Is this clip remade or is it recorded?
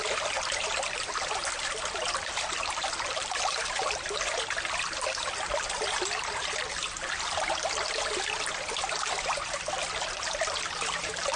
recorded